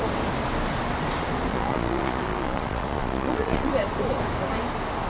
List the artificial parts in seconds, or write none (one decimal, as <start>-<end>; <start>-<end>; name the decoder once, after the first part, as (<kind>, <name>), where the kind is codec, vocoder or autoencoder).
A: 1.5-3.7 (vocoder, Vocos)